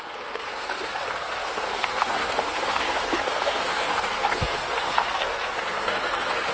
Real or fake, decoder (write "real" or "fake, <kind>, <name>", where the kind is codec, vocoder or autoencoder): fake, codec, SNAC